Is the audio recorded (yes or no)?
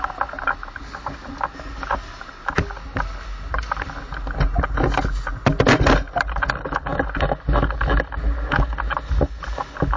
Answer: yes